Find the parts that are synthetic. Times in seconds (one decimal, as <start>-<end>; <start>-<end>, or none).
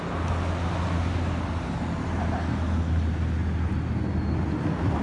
none